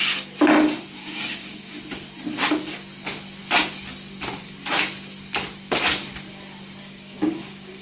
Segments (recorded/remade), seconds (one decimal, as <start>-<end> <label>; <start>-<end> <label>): 0.0-1.0 recorded; 1.0-1.8 remade; 1.8-6.8 recorded; 6.8-7.8 remade